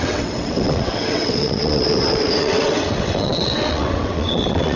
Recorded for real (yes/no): no